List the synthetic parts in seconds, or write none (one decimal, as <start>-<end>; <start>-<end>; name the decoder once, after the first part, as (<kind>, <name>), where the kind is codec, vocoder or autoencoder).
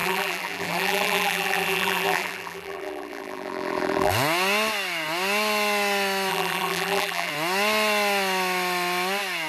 0.0-4.1 (vocoder, BigVGAN v2); 6.3-7.3